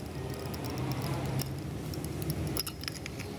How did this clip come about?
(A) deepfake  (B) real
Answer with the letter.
B